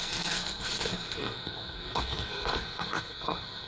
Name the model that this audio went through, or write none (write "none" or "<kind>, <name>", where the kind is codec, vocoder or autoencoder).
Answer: codec, SNAC